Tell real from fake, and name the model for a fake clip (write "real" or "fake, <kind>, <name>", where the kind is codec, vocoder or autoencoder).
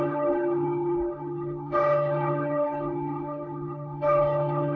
fake, codec, HILCodec